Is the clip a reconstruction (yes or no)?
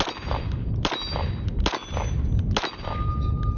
no